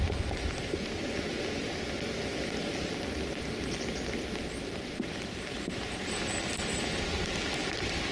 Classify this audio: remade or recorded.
recorded